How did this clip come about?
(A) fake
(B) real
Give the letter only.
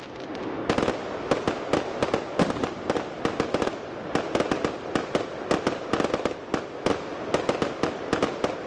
B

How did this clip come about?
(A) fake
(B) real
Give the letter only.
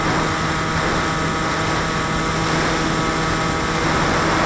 B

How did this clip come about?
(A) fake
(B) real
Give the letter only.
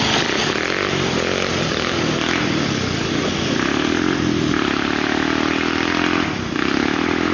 B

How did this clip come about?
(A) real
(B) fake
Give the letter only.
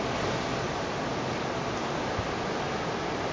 A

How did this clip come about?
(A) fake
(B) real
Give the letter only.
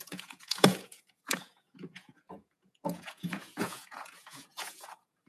A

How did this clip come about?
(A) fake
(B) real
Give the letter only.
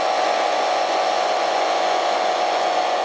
A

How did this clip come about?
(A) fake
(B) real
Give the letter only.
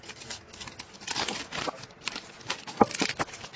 B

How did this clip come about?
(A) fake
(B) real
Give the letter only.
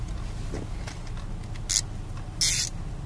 B